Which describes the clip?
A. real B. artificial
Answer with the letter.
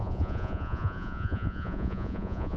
B